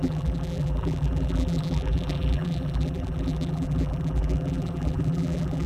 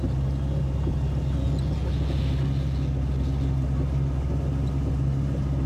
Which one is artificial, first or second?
first